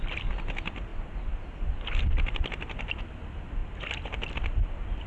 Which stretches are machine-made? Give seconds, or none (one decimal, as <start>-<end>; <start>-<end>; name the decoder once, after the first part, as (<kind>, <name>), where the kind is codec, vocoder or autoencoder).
none